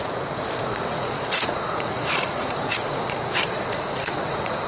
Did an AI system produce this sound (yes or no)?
yes